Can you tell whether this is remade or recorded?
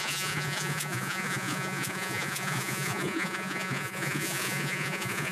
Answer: remade